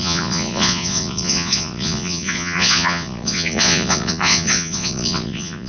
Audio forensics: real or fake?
fake